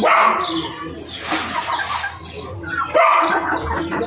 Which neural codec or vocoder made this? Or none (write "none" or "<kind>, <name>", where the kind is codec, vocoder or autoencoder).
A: none